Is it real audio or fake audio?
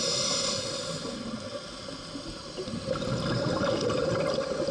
real